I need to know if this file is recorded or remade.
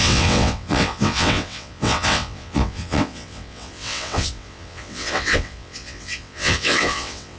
remade